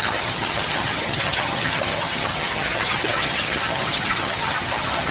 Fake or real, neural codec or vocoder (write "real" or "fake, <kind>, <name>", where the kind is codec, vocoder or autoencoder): fake, vocoder, HiFi-GAN